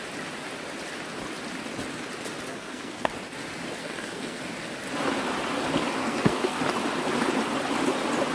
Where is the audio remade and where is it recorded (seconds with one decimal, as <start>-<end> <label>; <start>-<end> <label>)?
0.0-2.5 recorded; 2.5-3.1 remade; 3.1-3.8 recorded; 3.8-4.4 remade; 4.4-6.0 recorded; 6.0-6.6 remade; 6.6-8.3 recorded